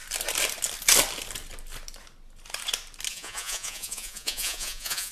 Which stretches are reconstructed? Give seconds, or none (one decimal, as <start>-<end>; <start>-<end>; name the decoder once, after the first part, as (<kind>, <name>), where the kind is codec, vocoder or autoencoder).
3.1-5.1 (vocoder, Vocos)